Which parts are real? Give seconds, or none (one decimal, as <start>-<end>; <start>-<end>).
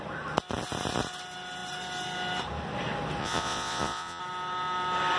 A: 0.0-3.2; 4.2-5.2